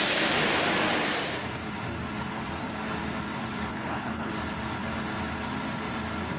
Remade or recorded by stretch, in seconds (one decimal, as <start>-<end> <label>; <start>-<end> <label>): 0.0-3.7 recorded; 3.7-4.3 remade; 4.3-6.4 recorded